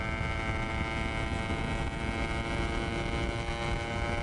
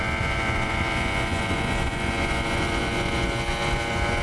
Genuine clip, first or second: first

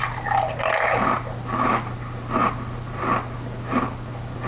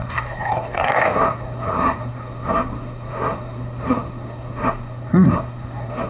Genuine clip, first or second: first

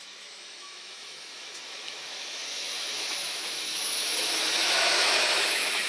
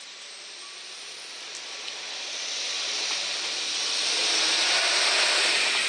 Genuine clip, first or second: second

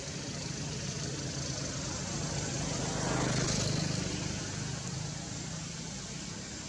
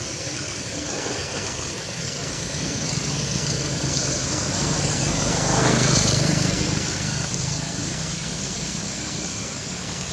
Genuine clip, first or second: first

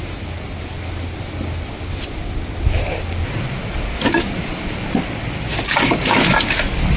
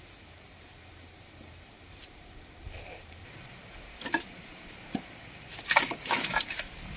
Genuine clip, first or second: first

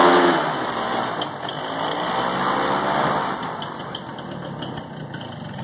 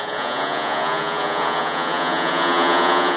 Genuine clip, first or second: first